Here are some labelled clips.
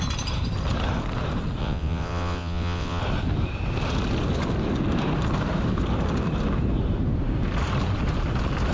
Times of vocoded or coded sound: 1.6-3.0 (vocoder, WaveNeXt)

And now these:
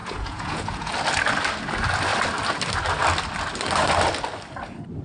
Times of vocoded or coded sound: 0.0-0.9 (vocoder, Vocos)

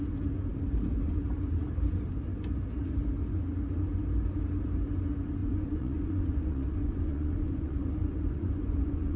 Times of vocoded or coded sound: 5.4-9.2 (vocoder, Vocos)

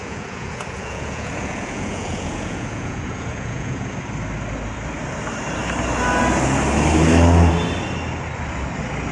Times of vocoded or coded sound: 0.0-3.9 (vocoder, Vocos)

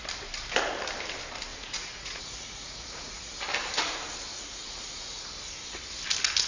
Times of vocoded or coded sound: 1.5-3.3 (vocoder, Vocos); 4.3-5.2

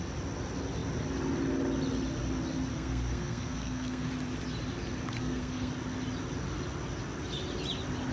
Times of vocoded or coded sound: 2.7-4.1 (codec, SNAC); 5.2-5.7

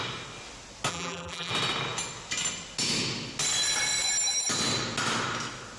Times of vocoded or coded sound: 0.9-1.5 (vocoder, BigVGAN v2)